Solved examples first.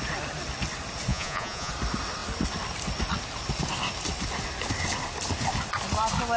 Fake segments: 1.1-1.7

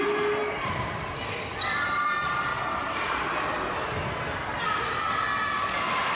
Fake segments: 0.4-1.4

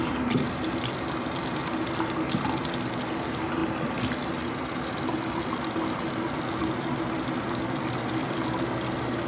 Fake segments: none

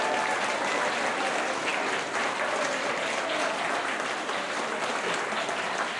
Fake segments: none

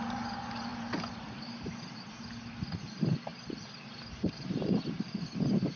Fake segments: 0.0-5.8

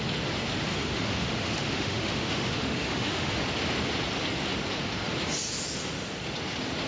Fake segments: 0.7-3.4